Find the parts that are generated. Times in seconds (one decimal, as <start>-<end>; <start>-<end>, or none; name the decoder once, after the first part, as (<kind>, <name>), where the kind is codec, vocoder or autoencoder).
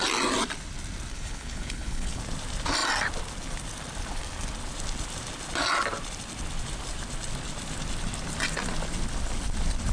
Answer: 1.1-2.2 (codec, HILCodec)